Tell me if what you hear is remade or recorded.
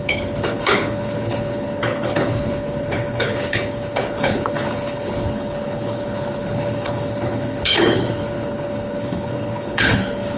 remade